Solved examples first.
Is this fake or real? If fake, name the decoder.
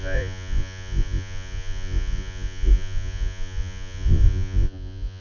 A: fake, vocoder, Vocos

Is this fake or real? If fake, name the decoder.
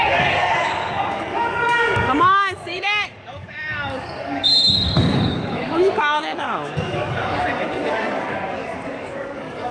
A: fake, codec, DAC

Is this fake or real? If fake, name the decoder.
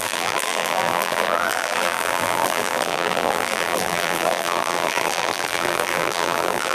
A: fake, vocoder, BigVGAN v2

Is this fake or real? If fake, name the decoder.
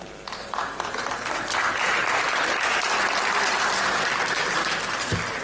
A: fake, vocoder, BigVGAN v2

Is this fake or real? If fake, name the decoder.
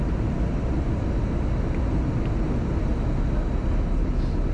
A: real